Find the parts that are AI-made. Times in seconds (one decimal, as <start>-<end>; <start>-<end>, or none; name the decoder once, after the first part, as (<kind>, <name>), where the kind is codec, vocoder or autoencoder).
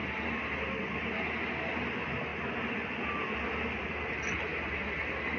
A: none